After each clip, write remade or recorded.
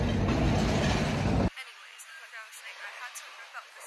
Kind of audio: recorded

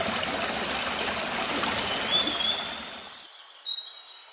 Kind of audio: recorded